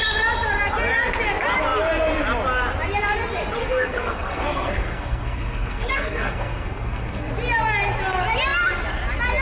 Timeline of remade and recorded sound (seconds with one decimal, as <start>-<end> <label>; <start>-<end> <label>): 0.0-3.6 recorded; 3.6-7.3 remade; 7.3-9.4 recorded